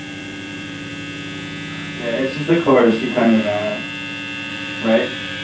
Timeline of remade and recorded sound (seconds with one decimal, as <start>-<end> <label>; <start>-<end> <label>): 0.0-0.9 remade; 0.9-2.2 recorded; 2.2-3.7 remade; 3.7-4.5 recorded; 4.5-5.4 remade